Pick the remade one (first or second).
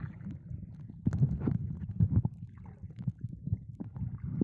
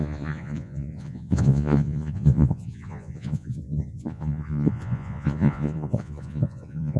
second